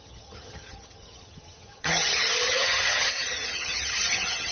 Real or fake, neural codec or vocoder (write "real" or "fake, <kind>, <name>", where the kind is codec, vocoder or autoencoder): fake, vocoder, HiFi-GAN